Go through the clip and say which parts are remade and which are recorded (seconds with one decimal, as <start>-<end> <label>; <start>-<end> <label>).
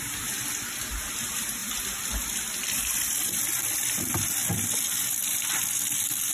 0.0-6.3 remade